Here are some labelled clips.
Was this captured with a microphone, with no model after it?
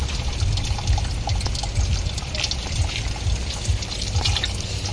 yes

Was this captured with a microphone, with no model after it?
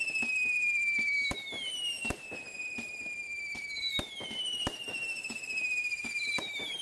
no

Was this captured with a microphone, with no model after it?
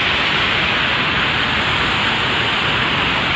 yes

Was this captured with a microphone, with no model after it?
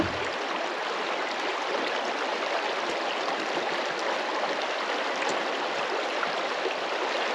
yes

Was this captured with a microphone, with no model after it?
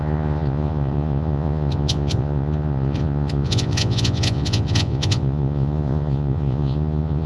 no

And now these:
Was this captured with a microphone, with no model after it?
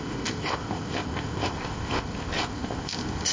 no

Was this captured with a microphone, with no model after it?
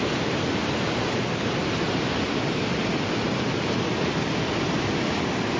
yes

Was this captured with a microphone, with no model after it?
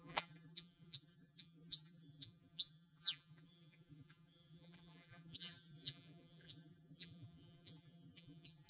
no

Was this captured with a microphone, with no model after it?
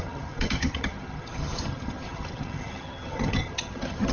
no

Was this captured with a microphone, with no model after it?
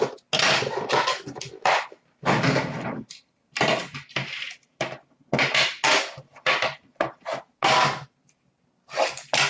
yes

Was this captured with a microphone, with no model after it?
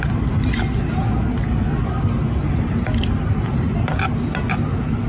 yes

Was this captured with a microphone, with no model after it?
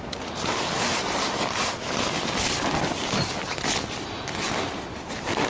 yes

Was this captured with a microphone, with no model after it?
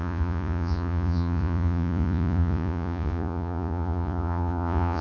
no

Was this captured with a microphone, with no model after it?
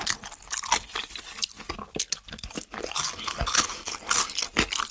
yes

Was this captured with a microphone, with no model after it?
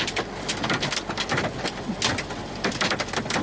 yes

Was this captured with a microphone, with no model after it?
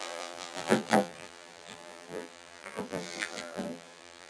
no